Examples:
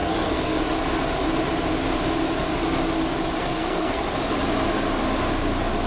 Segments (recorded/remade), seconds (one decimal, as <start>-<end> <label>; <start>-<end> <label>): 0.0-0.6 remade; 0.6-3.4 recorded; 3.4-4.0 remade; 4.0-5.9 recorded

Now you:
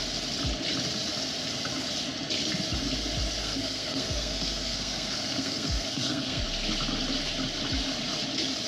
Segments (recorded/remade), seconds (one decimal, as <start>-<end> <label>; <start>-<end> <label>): 0.0-3.4 recorded; 3.4-6.4 remade; 6.4-8.7 recorded

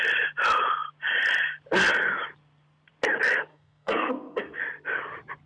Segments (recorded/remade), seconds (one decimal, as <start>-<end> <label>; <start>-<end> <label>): 0.0-3.5 recorded; 3.5-4.6 remade; 4.6-5.5 recorded